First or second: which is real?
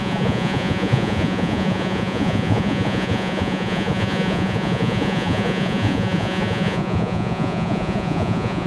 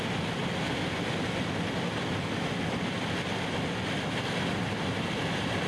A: second